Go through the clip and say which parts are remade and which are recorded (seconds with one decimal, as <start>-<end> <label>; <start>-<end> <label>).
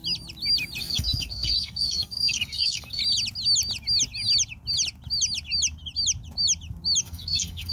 0.0-0.8 recorded; 0.8-3.0 remade; 3.0-7.0 recorded; 7.0-7.7 remade